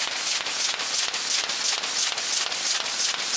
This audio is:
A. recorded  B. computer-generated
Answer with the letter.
A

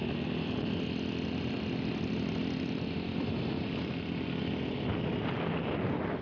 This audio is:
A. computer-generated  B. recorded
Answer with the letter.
B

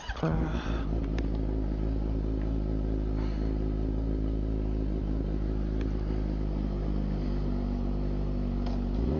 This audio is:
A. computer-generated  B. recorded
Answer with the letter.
B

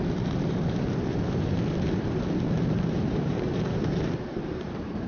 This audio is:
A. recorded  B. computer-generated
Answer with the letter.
B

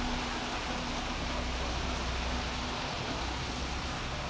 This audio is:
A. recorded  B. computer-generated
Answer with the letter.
A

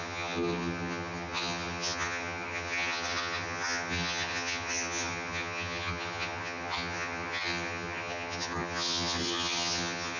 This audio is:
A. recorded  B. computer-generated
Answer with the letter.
B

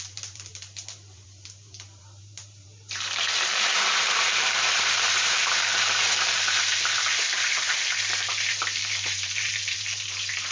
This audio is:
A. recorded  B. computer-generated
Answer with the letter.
B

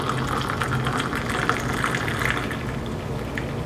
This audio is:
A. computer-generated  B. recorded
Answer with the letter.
B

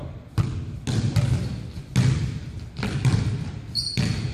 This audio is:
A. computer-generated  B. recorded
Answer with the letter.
B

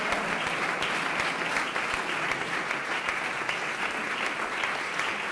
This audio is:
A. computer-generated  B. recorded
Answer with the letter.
B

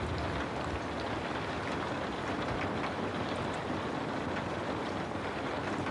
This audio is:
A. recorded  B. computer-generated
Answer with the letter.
A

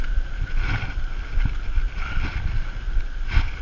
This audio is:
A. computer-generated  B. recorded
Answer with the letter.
B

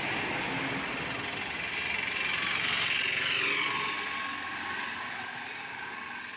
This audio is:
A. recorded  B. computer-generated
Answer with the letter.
A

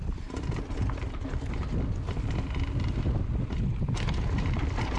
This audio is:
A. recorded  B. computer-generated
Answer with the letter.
A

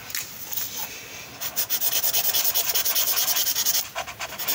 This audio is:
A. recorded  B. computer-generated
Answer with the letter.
A